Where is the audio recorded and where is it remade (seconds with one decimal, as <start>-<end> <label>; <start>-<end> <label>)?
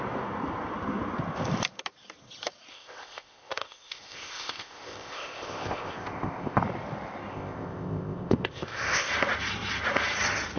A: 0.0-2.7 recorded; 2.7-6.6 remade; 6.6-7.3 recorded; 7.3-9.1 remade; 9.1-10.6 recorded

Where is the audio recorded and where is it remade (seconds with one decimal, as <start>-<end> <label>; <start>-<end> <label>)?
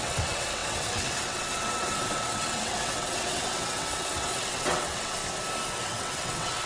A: 0.0-5.2 remade; 5.2-5.8 recorded; 5.8-6.7 remade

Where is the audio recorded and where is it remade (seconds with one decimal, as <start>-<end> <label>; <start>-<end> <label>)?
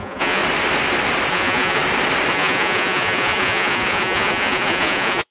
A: 0.0-0.4 remade; 0.4-1.3 recorded; 1.3-1.8 remade; 1.8-2.3 recorded; 2.3-5.3 remade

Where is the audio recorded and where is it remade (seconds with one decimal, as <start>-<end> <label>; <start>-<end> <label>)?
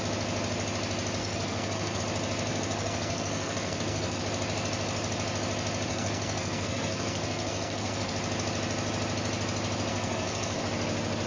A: 0.0-1.2 recorded; 1.2-2.0 remade; 2.0-2.5 recorded; 2.5-4.2 remade; 4.2-5.9 recorded; 5.9-8.1 remade; 8.1-9.9 recorded; 9.9-10.6 remade; 10.6-11.3 recorded